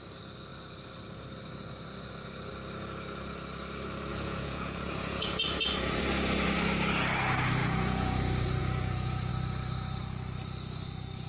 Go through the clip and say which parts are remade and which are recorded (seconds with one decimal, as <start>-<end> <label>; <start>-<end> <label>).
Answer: 0.0-4.1 recorded; 4.1-6.0 remade; 6.0-7.6 recorded; 7.6-8.2 remade; 8.2-8.6 recorded; 8.6-9.3 remade; 9.3-11.3 recorded